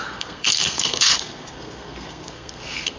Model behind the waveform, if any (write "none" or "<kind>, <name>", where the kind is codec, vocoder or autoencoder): codec, SNAC